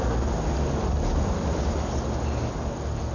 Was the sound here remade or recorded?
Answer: recorded